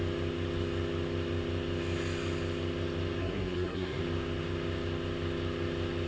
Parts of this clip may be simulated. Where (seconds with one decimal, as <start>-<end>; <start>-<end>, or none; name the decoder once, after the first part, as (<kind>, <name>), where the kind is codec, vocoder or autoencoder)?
3.2-4.0 (codec, SNAC)